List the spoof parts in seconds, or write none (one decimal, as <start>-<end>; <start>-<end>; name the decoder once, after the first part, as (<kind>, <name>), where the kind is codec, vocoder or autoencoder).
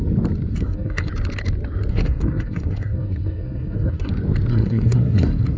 0.5-1.1 (codec, SNAC); 1.9-4.1; 4.5-5.6